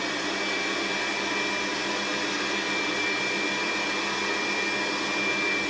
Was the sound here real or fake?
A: real